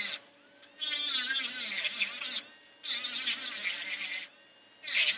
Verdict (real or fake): real